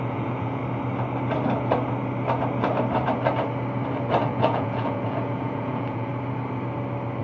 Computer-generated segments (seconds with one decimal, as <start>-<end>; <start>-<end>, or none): 0.0-0.6; 4.2-6.1